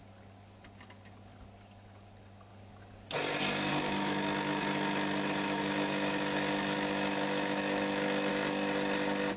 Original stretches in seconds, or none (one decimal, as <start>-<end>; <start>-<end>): 0.0-3.7; 8.3-9.4